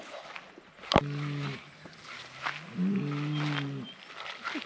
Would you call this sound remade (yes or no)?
no